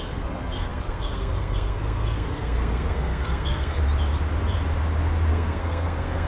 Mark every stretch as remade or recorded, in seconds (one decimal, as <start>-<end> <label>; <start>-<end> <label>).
0.0-3.8 remade; 3.8-5.3 recorded; 5.3-6.3 remade